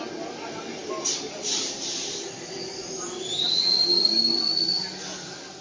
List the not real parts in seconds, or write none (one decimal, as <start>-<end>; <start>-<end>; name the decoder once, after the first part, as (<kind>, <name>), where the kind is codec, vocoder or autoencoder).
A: none